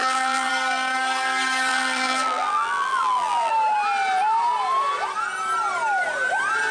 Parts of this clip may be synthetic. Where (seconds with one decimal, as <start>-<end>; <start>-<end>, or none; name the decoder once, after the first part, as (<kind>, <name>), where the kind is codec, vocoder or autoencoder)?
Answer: 0.0-0.5 (vocoder, BigVGAN v2); 1.7-3.5